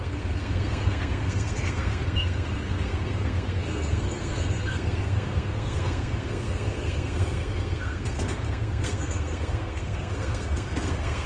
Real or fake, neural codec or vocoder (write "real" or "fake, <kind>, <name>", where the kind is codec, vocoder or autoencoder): fake, codec, SNAC